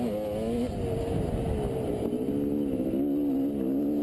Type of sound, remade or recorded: recorded